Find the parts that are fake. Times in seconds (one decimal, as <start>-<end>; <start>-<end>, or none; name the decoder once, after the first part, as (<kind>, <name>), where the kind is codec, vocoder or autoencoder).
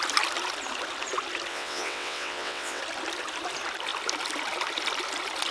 1.5-2.8 (vocoder, WaveNeXt)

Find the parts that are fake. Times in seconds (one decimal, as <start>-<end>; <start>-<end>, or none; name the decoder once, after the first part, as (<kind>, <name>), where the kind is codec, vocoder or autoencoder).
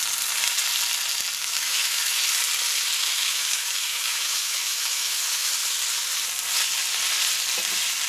1.4-2.2 (autoencoder, DAC-VAE); 3.0-5.5